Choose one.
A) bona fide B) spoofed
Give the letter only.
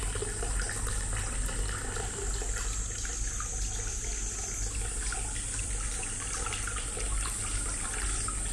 A